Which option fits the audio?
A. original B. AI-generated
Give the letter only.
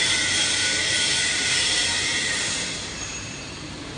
B